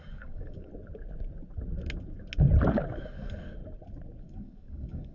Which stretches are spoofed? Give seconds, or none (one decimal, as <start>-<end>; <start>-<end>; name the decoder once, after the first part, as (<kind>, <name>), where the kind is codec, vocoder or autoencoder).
0.0-0.7 (codec, DAC); 2.7-3.6; 4.2-5.1